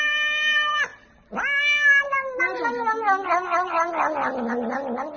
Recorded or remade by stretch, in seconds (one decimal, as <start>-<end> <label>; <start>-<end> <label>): 0.0-5.2 recorded